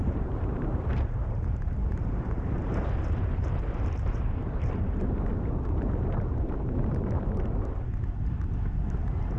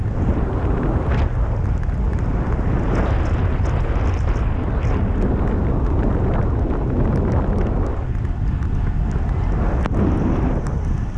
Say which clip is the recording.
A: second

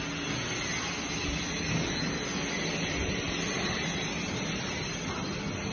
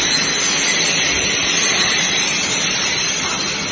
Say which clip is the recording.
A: first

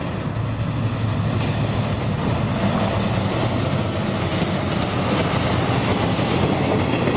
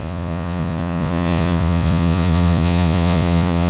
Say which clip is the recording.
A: first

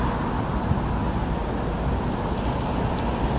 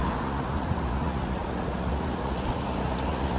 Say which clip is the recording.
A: first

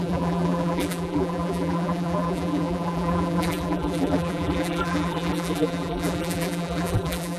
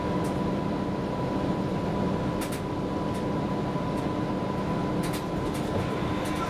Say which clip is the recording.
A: second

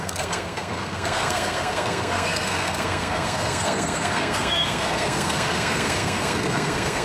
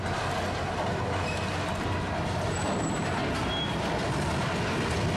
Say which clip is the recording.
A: second